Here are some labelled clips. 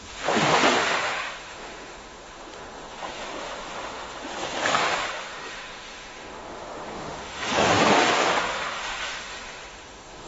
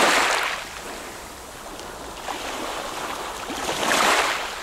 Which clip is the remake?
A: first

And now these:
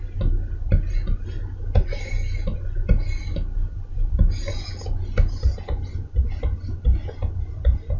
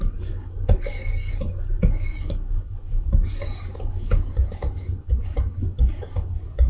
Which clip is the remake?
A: second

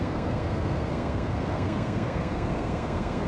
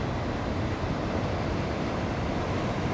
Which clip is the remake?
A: first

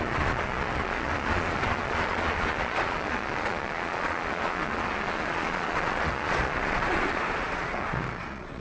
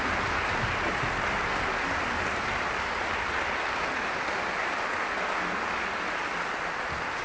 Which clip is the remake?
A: first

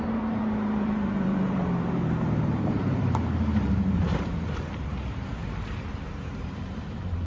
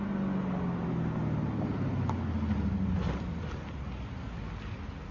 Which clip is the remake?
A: first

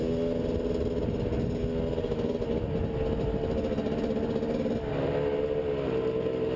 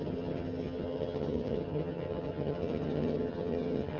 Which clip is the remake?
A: second